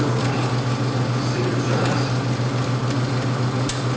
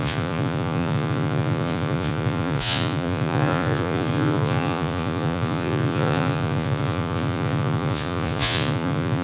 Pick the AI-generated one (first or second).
second